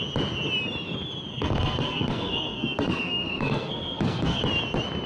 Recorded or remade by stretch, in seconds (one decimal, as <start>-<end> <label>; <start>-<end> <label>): 0.0-1.3 recorded; 1.3-4.4 remade; 4.4-5.1 recorded